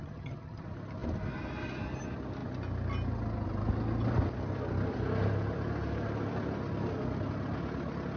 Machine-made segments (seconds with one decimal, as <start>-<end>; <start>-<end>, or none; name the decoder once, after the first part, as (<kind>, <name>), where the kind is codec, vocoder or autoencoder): 0.0-0.6 (vocoder, HiFi-GAN)

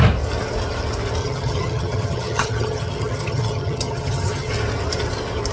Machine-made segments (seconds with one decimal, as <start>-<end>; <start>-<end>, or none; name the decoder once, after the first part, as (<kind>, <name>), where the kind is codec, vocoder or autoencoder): 1.2-4.5 (vocoder, HiFi-GAN)

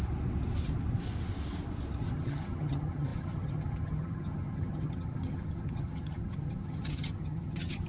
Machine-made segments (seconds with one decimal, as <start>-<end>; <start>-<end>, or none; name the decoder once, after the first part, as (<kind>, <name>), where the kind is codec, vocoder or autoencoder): 2.0-7.9 (vocoder, HiFi-GAN)

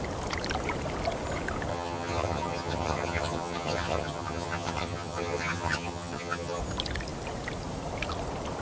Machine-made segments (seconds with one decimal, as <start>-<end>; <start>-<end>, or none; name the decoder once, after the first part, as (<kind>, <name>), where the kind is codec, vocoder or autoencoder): 1.7-6.6 (vocoder, HiFi-GAN)

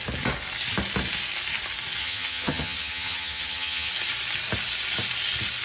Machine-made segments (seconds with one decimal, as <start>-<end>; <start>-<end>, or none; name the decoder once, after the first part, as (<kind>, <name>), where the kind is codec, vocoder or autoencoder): 2.0-3.9 (vocoder, HiFi-GAN)

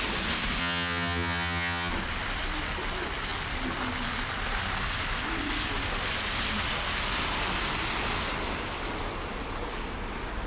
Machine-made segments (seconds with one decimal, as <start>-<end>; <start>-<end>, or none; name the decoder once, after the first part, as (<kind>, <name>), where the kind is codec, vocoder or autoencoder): 0.6-1.9 (vocoder, HiFi-GAN)